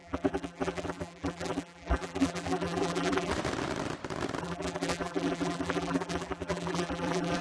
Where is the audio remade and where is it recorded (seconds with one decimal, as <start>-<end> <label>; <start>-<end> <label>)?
0.0-3.3 remade; 3.3-4.4 recorded; 4.4-7.4 remade